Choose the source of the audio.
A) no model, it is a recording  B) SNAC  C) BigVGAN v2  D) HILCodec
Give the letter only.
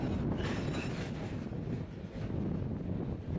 A